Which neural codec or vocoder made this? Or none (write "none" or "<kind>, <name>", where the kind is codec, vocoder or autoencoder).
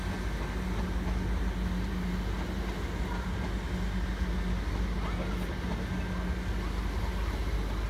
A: none